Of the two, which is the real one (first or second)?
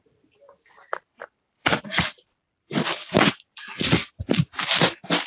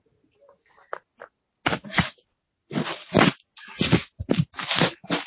second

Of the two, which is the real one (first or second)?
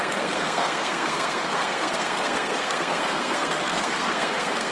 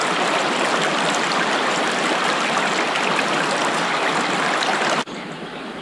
second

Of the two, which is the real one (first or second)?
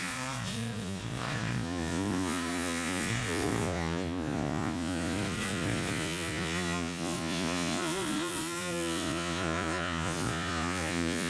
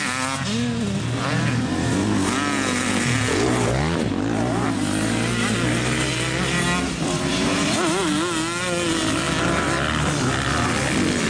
second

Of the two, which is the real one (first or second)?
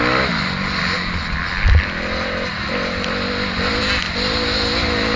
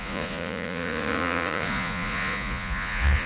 first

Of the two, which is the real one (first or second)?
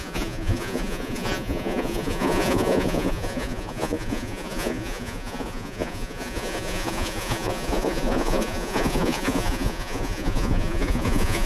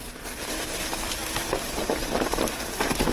second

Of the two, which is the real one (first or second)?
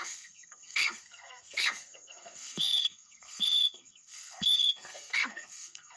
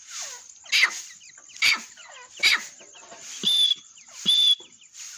second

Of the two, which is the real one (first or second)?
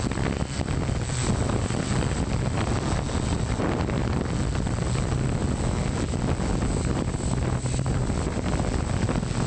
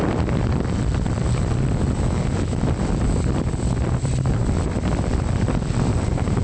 first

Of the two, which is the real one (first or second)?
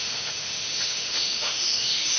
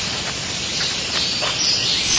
second